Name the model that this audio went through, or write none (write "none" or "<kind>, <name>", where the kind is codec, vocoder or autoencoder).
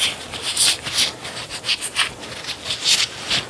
none